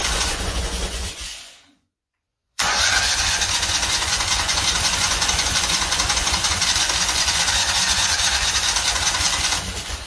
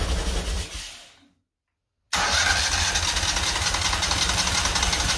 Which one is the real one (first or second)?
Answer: second